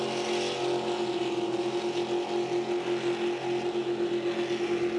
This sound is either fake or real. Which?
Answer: real